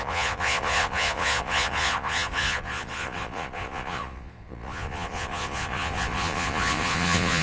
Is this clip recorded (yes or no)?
no